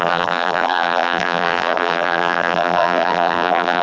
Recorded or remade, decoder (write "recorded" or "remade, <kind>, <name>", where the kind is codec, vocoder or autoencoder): remade, vocoder, BigVGAN v2